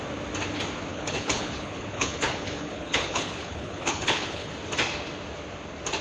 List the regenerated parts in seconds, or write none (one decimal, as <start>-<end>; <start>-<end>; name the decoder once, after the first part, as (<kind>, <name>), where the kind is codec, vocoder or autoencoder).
0.9-4.5 (codec, HILCodec)